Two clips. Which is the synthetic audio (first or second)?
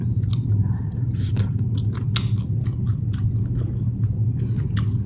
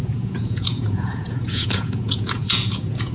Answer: second